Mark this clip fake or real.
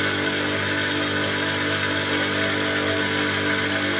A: real